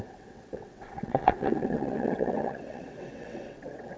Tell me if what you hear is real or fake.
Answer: fake